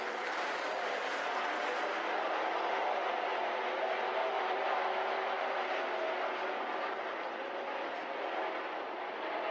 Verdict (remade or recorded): recorded